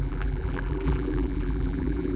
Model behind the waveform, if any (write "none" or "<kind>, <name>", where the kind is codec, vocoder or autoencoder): vocoder, BigVGAN v2